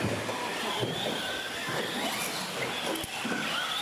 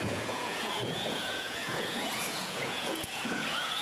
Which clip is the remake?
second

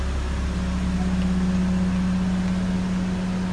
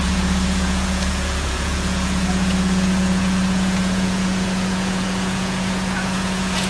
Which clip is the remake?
second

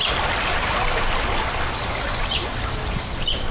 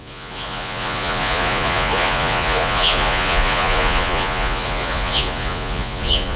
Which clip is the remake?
second